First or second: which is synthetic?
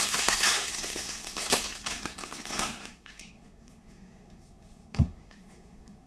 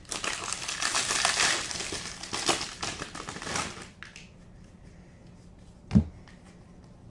first